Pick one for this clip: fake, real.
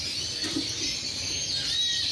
real